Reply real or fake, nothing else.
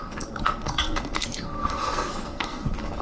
fake